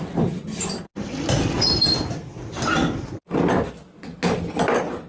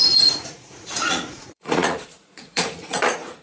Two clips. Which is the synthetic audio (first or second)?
second